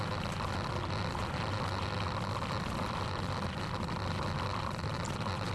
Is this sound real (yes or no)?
yes